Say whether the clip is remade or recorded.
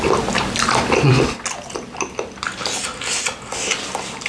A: recorded